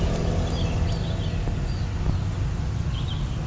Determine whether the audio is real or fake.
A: real